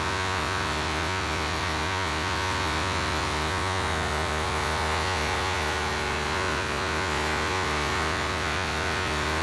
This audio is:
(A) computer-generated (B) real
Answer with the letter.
A